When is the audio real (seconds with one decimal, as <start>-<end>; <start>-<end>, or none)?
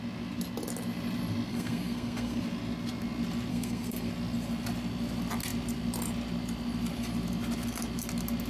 0.0-1.5; 2.4-3.5; 4.1-8.5